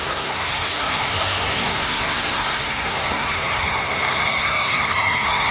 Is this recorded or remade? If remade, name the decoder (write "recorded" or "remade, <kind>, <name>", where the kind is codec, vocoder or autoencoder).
remade, codec, SNAC